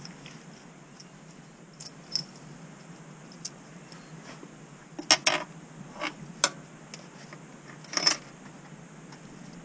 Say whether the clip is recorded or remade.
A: recorded